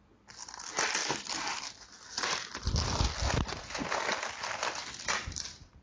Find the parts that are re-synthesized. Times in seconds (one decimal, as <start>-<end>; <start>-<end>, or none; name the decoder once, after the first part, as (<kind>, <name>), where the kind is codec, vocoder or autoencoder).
none